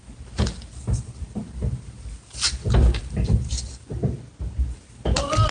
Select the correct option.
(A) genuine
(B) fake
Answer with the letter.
A